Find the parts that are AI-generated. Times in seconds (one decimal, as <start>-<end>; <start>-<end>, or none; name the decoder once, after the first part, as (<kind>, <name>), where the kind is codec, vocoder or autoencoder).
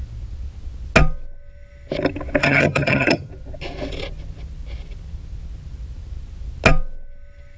2.4-3.3 (vocoder, HiFi-GAN)